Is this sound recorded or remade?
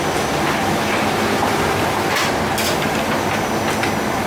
recorded